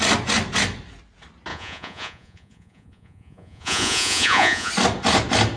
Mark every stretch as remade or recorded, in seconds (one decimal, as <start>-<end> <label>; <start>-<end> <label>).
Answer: 0.0-1.5 recorded; 1.5-4.7 remade; 4.7-5.6 recorded